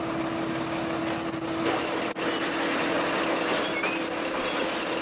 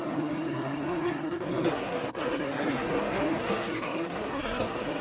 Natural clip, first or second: first